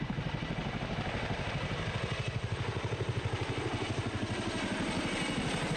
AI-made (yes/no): yes